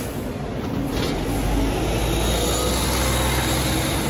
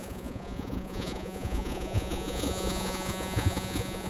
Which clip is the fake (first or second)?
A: second